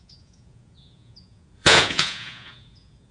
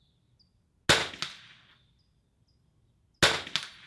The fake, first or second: first